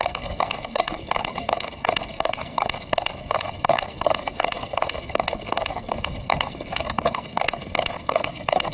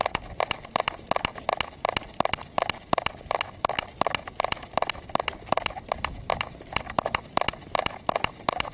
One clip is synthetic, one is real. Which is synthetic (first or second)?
first